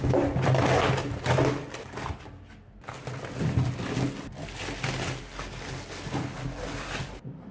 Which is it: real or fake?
real